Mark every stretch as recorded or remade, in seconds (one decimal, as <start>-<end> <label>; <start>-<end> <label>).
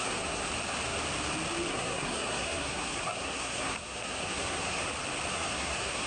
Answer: 0.0-0.5 remade; 0.5-1.7 recorded; 1.7-4.8 remade; 4.8-5.3 recorded; 5.3-6.1 remade